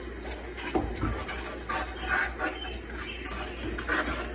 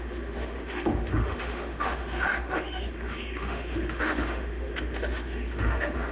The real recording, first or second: first